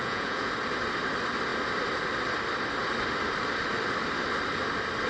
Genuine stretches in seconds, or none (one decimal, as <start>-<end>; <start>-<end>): 0.5-5.1

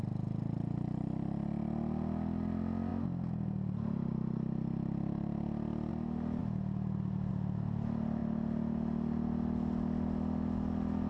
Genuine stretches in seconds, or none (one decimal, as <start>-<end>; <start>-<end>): 0.0-11.1

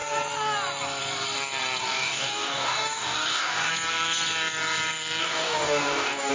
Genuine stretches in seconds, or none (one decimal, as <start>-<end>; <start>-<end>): 0.0-1.8; 3.7-5.2

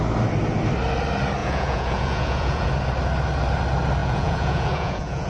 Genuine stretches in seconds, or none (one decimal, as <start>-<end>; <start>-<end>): 0.0-1.4; 2.7-4.0

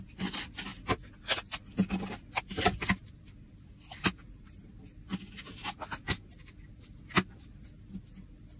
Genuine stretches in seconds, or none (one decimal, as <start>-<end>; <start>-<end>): 0.0-3.0; 4.6-8.6

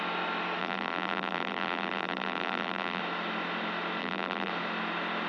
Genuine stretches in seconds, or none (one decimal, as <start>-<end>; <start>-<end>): 0.0-0.6; 3.0-4.0; 4.5-5.3

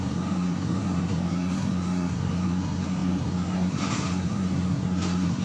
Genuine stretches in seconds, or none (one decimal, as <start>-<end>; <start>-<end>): none